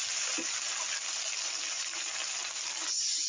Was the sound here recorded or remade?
recorded